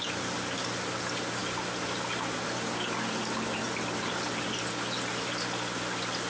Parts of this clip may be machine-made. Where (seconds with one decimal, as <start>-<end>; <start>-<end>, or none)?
none